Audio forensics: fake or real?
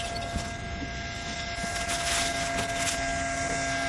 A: real